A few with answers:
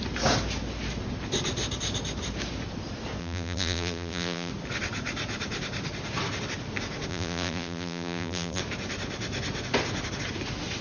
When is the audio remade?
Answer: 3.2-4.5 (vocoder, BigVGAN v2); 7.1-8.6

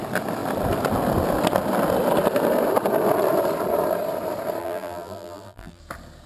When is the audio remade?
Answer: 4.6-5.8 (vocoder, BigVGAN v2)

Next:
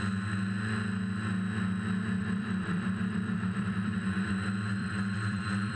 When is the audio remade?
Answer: 2.2-4.3 (vocoder, BigVGAN v2); 4.8-5.8

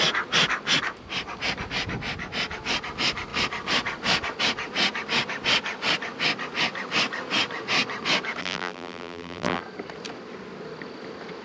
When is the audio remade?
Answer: 8.4-9.6 (vocoder, BigVGAN v2)

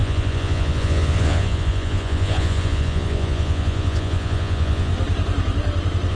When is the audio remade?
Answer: 0.0-4.9 (vocoder, Vocos)

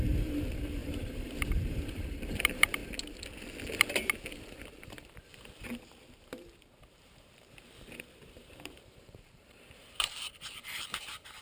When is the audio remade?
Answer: 0.0-2.8 (vocoder, BigVGAN v2); 4.5-11.4

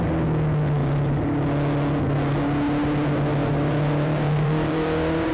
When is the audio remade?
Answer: 3.4-5.3 (vocoder, BigVGAN v2)